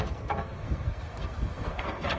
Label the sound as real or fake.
fake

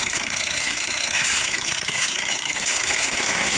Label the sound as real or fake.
fake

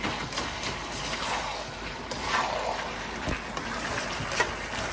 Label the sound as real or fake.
real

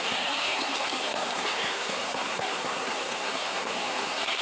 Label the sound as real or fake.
fake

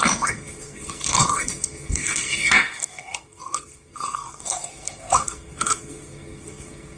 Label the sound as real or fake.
fake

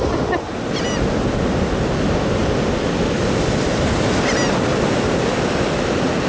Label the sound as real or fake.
real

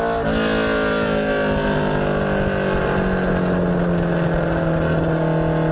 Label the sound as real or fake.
real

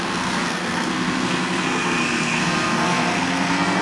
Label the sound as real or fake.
fake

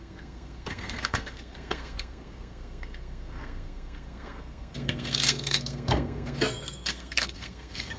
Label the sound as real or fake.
fake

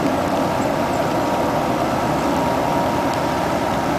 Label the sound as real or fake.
real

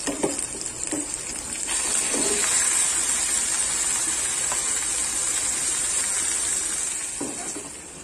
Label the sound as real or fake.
real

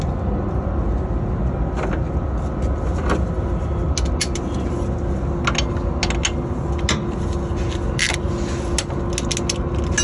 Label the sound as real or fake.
real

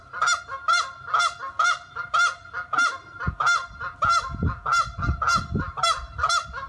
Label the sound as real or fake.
real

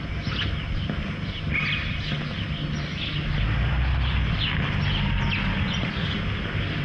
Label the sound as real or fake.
real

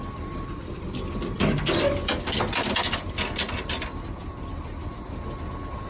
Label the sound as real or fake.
real